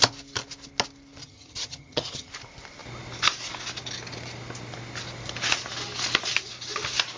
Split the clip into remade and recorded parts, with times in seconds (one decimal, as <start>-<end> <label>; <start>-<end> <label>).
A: 0.0-1.2 recorded; 1.2-2.3 remade; 2.3-7.2 recorded